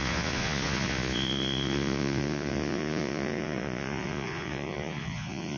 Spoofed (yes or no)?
yes